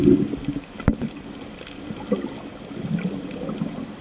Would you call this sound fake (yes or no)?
no